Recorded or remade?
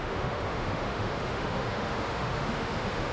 remade